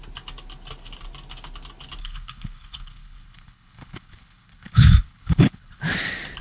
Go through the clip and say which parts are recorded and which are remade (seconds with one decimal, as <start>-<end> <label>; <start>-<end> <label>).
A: 0.0-2.0 recorded; 2.0-5.8 remade; 5.8-6.4 recorded